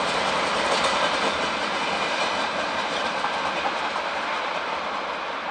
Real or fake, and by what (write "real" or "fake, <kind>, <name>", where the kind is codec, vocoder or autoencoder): real